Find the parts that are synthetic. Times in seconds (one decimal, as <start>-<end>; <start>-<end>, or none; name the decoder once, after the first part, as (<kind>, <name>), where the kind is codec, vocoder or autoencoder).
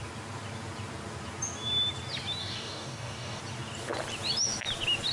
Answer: 2.4-3.4 (codec, DAC)